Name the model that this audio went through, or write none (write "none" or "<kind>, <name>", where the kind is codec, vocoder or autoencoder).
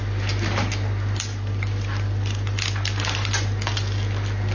none